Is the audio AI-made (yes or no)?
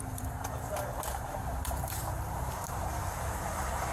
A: yes